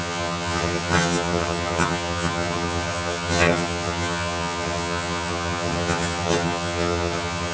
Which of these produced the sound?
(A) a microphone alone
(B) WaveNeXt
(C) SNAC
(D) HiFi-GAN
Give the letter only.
D